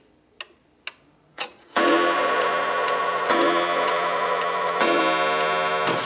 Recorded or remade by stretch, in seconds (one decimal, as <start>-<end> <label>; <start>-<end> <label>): 0.0-1.3 recorded; 1.3-5.0 remade; 5.0-6.1 recorded